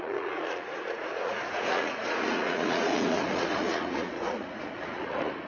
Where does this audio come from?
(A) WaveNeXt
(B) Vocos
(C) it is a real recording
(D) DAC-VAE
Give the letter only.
B